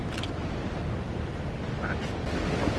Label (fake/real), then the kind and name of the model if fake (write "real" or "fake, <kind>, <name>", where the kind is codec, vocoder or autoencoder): real